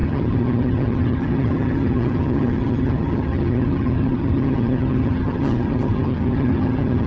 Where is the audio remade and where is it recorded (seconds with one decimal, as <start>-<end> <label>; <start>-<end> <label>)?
0.0-7.1 remade